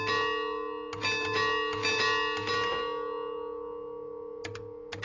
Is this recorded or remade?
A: recorded